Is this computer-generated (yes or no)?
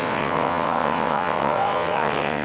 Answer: yes